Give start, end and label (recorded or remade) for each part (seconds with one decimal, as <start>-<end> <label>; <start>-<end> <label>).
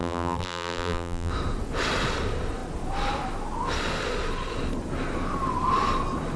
0.0-1.3 remade; 1.3-6.4 recorded